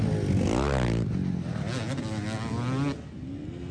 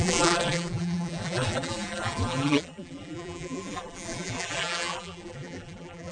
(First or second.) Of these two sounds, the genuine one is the first